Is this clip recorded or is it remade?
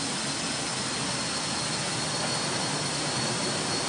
recorded